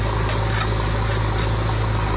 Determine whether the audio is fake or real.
real